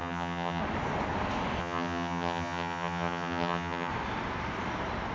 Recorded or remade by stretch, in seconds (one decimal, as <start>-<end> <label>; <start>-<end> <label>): 0.0-0.6 remade; 0.6-1.6 recorded; 1.6-3.9 remade; 3.9-5.1 recorded